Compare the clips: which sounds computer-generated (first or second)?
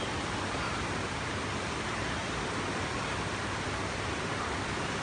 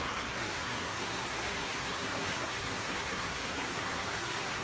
second